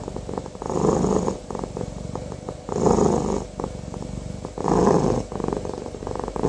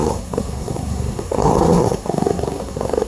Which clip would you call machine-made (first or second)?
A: second